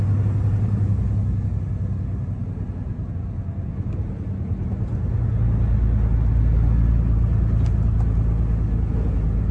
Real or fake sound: real